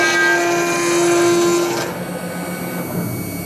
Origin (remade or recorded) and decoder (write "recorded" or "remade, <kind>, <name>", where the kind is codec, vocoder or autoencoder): recorded